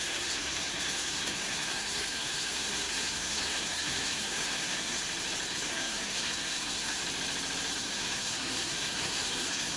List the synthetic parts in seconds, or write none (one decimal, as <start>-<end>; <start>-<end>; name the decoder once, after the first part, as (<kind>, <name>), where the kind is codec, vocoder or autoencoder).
0.0-5.0 (codec, SNAC); 5.5-7.0; 7.7-9.8

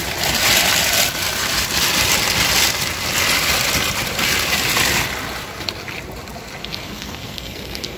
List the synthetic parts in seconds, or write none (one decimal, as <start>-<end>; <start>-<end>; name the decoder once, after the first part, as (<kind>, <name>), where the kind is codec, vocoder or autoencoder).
6.6-8.0 (codec, SNAC)

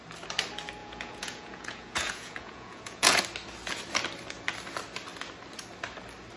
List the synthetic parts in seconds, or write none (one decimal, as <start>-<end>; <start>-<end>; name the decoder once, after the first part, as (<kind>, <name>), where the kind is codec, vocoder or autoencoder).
0.8-3.2 (vocoder, Vocos)

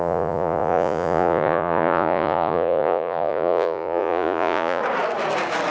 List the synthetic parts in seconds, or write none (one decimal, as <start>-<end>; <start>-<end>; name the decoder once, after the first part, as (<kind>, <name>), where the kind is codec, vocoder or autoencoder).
0.0-4.8 (vocoder, Vocos)

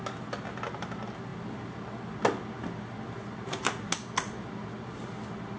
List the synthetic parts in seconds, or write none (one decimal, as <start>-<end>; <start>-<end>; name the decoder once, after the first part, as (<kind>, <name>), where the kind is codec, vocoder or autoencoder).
none

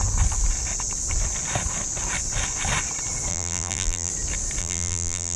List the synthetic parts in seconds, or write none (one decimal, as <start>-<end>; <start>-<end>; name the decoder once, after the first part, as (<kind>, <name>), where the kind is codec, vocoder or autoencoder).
3.3-4.1 (vocoder, BigVGAN v2); 4.6-5.4

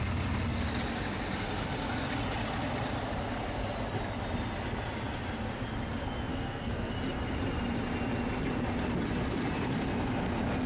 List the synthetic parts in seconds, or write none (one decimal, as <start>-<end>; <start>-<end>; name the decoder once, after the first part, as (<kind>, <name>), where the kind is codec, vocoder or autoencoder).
6.3-6.9 (codec, SNAC)

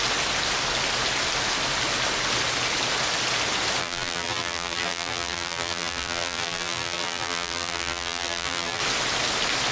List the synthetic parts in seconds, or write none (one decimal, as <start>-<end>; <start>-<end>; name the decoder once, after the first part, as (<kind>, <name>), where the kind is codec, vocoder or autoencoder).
3.8-8.8 (vocoder, BigVGAN v2)